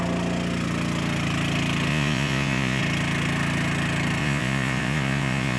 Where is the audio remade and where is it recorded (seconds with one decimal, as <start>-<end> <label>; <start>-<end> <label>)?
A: 0.0-1.9 recorded; 1.9-2.8 remade; 2.8-4.2 recorded; 4.2-5.6 remade